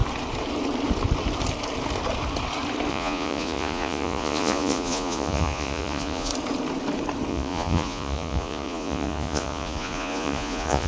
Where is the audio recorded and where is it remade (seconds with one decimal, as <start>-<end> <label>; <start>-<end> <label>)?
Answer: 0.0-2.9 recorded; 2.9-6.3 remade; 6.3-7.3 recorded; 7.3-10.9 remade